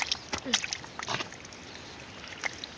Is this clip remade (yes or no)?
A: no